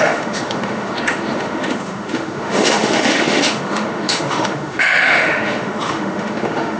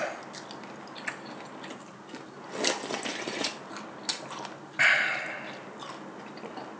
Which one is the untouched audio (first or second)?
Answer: second